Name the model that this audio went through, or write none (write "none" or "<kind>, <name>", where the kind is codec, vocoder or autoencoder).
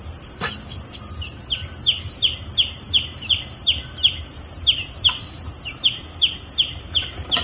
vocoder, BigVGAN v2